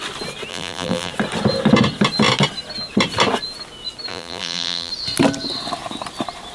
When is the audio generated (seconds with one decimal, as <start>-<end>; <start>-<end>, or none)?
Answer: 0.5-1.1; 4.1-4.9